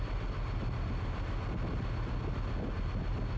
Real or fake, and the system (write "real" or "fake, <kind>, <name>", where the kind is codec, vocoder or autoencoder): real